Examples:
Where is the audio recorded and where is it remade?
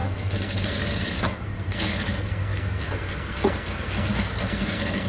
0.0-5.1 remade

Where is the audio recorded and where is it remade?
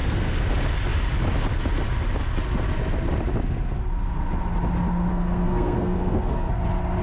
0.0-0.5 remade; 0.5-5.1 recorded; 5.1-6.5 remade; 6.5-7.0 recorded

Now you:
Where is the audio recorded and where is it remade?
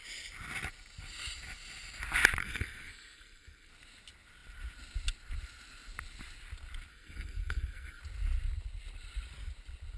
0.0-2.4 recorded; 2.4-3.7 remade; 3.7-6.9 recorded; 6.9-8.0 remade; 8.0-10.0 recorded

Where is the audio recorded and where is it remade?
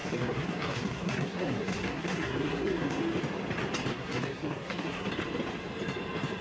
0.0-3.0 remade; 3.0-3.9 recorded; 3.9-5.1 remade; 5.1-6.4 recorded